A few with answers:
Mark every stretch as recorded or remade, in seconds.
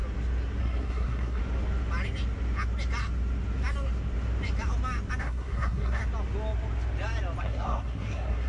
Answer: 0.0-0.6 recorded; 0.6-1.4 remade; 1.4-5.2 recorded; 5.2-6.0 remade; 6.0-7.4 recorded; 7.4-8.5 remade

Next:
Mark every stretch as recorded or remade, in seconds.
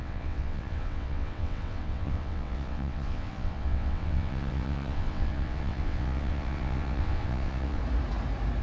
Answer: 0.0-7.8 remade; 7.8-8.6 recorded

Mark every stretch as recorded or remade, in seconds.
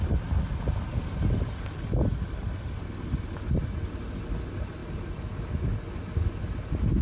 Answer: 0.0-7.0 recorded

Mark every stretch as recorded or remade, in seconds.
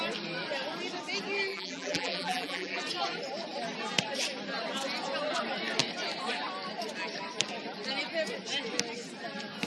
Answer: 0.0-1.5 recorded; 1.5-2.8 remade; 2.8-9.7 recorded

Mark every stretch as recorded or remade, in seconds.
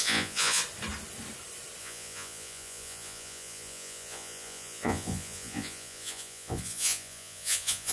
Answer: 0.0-0.6 remade; 0.6-1.8 recorded; 1.8-7.9 remade